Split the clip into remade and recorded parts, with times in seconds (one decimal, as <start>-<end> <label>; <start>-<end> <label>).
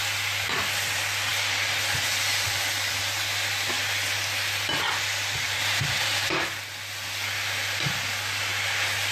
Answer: 0.0-5.6 recorded; 5.6-6.3 remade; 6.3-9.1 recorded